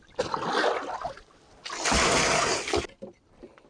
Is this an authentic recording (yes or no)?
yes